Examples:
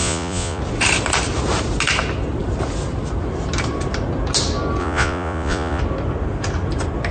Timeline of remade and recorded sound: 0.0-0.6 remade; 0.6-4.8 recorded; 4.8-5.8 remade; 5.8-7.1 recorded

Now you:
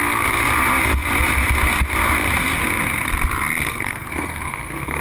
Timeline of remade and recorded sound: 0.0-3.7 recorded; 3.7-5.0 remade